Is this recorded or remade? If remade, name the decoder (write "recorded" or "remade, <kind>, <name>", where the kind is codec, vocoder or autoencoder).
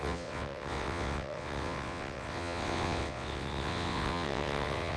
remade, vocoder, WaveNeXt